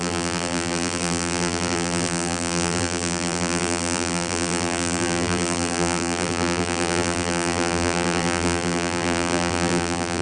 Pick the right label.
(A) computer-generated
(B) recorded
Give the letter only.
A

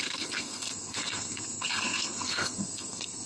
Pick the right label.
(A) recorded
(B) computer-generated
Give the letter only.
B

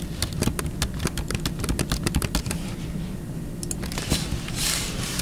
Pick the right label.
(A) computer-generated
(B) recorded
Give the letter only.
B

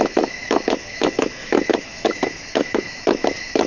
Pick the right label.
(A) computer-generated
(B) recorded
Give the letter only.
A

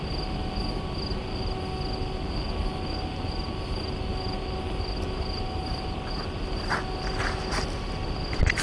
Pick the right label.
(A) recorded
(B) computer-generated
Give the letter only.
A